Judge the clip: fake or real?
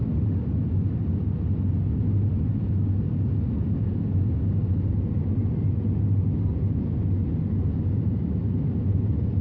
real